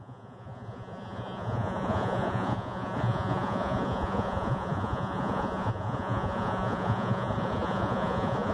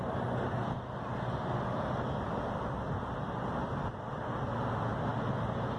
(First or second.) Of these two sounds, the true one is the second